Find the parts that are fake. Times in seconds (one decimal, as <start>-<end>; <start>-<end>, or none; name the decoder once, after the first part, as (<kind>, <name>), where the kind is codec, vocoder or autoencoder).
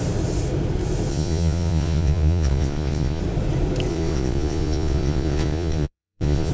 1.1-3.2 (vocoder, Vocos); 3.9-6.5